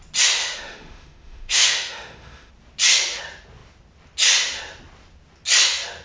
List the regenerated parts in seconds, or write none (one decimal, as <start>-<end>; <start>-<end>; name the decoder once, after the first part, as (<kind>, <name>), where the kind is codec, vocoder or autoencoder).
0.4-2.5 (autoencoder, DAC-VAE)